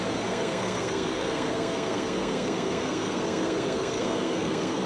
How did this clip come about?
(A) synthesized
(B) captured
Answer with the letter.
A